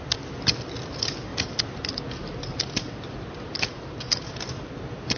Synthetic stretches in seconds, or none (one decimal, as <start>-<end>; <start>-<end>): none